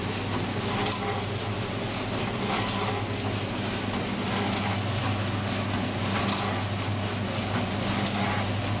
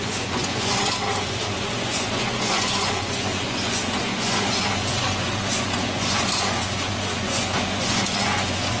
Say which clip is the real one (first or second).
first